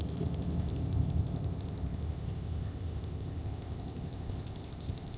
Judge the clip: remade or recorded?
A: remade